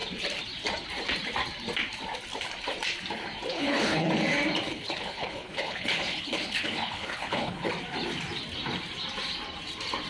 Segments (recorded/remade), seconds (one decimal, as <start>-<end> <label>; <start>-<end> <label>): 0.0-3.5 recorded; 3.5-4.1 remade; 4.1-4.7 recorded; 4.7-7.7 remade; 7.7-10.1 recorded